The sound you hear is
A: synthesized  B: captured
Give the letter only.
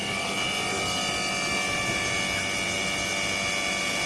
B